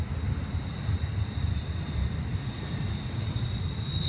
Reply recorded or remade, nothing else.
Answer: recorded